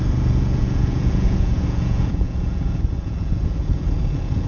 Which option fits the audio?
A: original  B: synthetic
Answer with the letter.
B